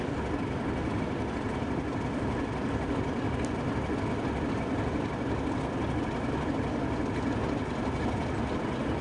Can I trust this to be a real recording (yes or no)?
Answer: yes